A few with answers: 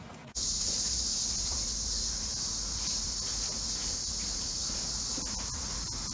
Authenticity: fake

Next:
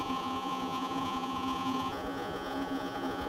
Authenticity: fake